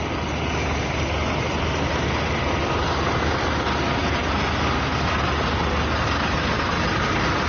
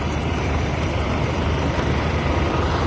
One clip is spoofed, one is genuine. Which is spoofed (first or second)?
second